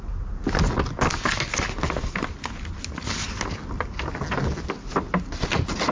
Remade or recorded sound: recorded